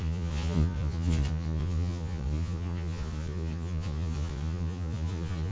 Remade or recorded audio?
remade